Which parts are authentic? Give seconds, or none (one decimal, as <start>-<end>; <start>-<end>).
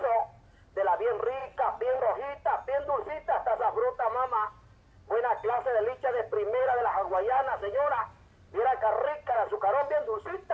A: 0.0-1.4; 2.0-10.5